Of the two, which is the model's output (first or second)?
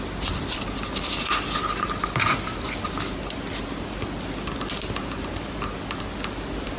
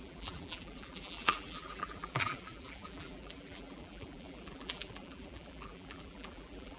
second